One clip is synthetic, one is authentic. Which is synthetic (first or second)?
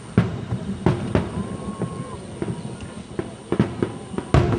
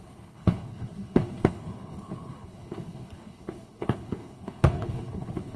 second